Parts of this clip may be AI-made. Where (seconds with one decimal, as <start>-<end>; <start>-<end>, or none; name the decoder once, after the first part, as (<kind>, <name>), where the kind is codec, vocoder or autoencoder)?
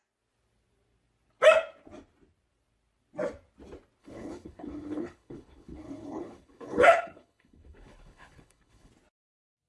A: 4.0-8.9 (codec, HILCodec)